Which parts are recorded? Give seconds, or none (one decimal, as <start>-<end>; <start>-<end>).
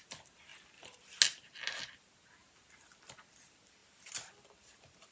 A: 0.0-5.1